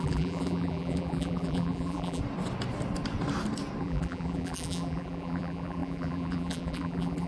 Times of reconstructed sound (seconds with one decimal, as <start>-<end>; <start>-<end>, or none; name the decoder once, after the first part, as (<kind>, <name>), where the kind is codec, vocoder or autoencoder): 0.0-2.2 (vocoder, BigVGAN v2); 3.8-7.3